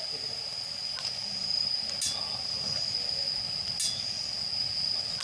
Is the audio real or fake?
real